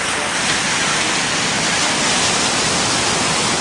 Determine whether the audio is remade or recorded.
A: recorded